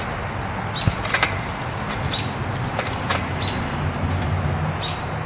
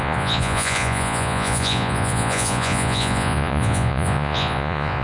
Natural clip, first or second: first